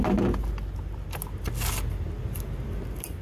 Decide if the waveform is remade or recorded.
recorded